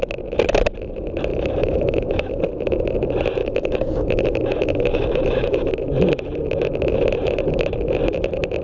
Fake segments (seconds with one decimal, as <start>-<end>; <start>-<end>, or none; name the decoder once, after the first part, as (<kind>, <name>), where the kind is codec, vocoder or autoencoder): 1.3-2.4 (autoencoder, DAC-VAE); 3.4-5.7